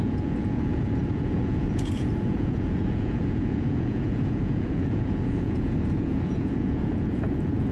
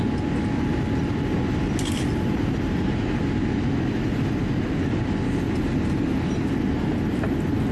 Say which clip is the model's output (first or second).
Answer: first